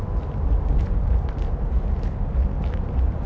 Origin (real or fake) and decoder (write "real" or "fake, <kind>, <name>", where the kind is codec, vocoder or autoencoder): real